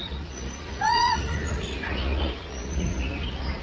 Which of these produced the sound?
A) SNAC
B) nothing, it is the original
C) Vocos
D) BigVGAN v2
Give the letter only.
C